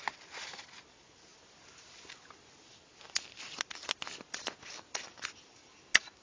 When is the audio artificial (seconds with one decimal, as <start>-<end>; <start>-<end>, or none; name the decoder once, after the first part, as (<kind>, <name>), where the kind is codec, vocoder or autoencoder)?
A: none